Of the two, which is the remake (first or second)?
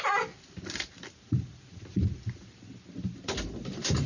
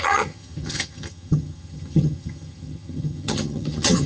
second